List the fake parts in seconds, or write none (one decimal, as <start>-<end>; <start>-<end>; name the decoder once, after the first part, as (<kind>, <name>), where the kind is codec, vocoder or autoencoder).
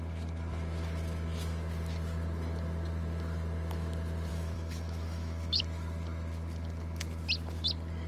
4.3-5.6 (autoencoder, DAC-VAE)